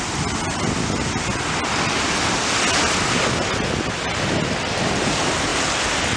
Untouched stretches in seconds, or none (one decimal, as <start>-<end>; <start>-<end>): 0.0-6.2

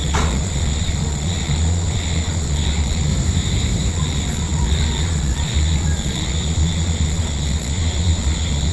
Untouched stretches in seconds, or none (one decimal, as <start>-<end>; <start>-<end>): 3.1-3.9